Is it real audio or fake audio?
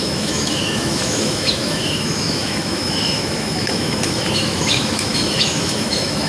fake